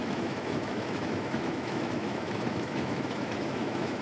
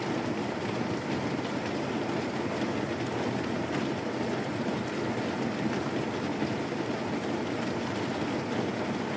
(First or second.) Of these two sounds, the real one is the second